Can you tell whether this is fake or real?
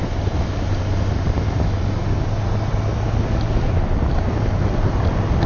real